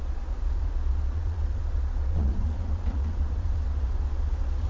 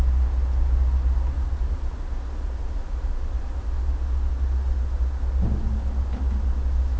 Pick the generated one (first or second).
first